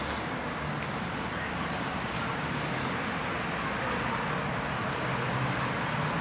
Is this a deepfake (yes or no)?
no